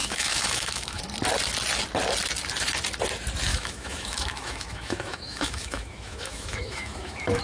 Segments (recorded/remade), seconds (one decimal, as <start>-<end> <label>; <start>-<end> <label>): 0.0-1.0 remade; 1.0-3.5 recorded; 3.5-7.4 remade